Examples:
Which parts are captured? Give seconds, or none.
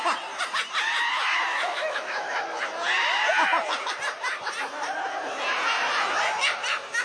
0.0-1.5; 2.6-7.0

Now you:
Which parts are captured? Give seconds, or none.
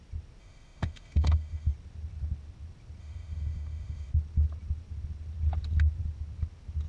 0.0-0.4; 1.7-3.0; 4.1-6.9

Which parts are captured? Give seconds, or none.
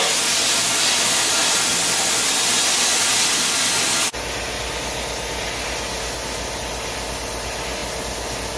0.0-8.6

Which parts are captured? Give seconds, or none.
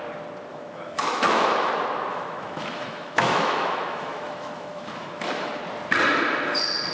0.0-0.5; 1.7-2.1; 5.6-6.9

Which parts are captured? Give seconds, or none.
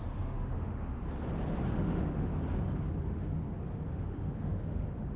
1.0-1.7; 2.3-3.0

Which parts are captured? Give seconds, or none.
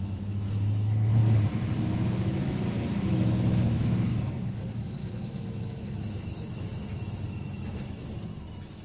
1.2-1.8; 2.6-3.1; 4.1-5.0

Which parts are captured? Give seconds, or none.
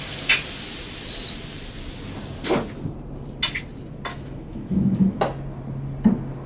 0.0-4.1; 5.2-6.5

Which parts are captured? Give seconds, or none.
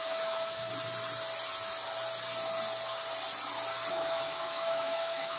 0.7-3.9